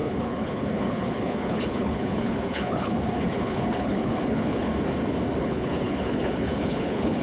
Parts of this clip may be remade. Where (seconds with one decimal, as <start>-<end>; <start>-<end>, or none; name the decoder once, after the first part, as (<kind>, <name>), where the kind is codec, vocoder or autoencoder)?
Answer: 0.0-4.7 (codec, HILCodec); 5.4-7.2